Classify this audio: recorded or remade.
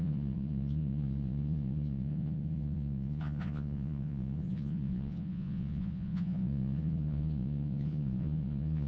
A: remade